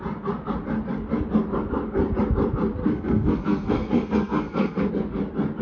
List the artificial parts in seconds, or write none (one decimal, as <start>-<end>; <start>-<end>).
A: 2.8-4.9